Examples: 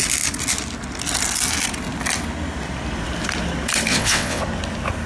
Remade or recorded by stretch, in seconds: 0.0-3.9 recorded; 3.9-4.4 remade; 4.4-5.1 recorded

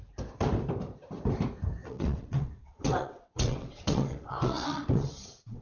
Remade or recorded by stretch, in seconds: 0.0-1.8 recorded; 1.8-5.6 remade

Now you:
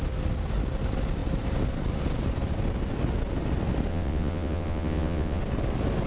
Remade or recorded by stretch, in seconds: 0.0-3.9 recorded; 3.9-5.4 remade; 5.4-6.1 recorded

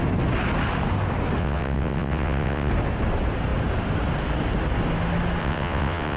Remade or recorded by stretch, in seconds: 0.0-1.4 recorded; 1.4-2.7 remade; 2.7-5.4 recorded; 5.4-6.2 remade

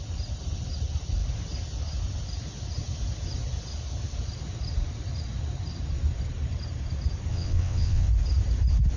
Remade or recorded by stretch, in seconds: 0.0-7.3 recorded; 7.3-8.1 remade; 8.1-9.0 recorded